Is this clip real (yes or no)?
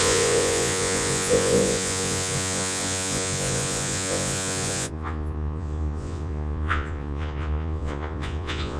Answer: no